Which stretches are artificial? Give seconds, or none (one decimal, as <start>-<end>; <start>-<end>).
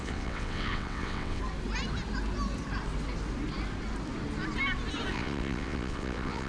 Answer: 0.0-1.4; 5.1-6.5